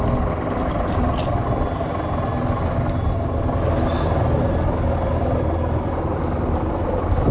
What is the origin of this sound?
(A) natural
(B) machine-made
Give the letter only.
A